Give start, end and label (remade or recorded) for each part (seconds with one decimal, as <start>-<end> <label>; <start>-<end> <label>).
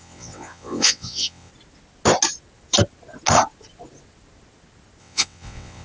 0.0-1.5 remade; 1.5-5.0 recorded; 5.0-5.8 remade